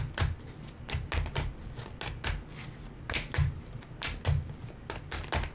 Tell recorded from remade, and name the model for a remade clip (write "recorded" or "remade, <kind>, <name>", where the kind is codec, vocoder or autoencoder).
recorded